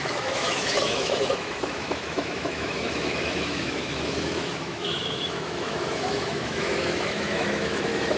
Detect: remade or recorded remade